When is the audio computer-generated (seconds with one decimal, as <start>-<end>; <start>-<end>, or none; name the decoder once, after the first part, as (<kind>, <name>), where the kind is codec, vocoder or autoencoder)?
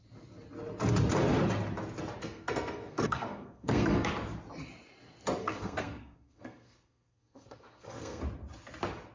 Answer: 2.2-4.1 (codec, SNAC); 5.4-8.2